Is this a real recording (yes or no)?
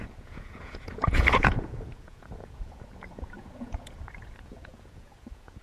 no